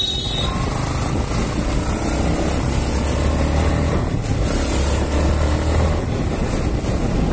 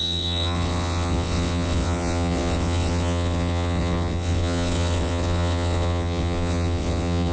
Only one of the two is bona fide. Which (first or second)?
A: first